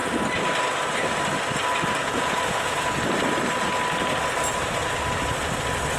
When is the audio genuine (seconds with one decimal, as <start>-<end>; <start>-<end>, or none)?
0.0-2.0; 3.0-6.0